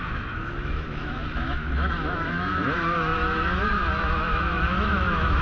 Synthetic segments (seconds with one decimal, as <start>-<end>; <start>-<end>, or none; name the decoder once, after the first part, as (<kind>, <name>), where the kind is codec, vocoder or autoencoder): 0.0-5.4 (autoencoder, DAC-VAE)